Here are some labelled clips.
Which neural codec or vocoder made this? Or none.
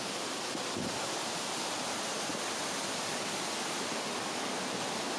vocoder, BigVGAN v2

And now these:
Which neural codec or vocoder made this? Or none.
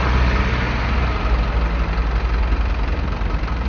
none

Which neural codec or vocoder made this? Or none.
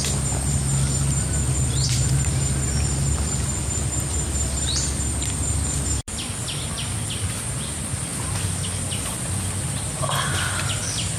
none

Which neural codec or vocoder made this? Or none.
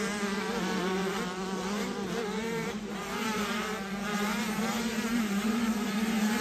vocoder, BigVGAN v2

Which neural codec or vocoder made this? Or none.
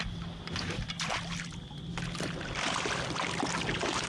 none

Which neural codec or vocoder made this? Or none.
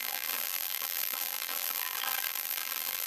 vocoder, BigVGAN v2